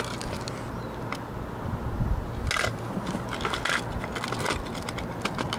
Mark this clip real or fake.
real